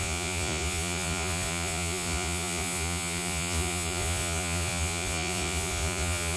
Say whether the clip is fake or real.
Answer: fake